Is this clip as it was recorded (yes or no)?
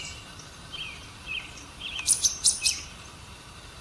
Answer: no